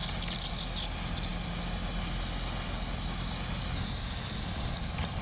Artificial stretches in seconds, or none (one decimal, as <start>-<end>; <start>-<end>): none